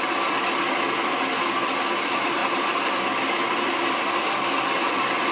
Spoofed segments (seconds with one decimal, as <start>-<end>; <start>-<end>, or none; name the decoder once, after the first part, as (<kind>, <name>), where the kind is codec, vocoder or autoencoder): none